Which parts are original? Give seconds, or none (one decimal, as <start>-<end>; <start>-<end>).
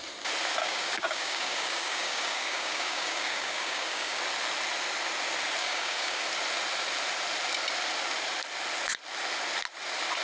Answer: 0.0-0.6; 4.2-5.6; 6.2-10.2